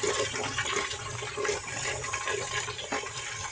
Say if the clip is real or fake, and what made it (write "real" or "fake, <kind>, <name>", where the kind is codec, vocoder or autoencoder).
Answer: real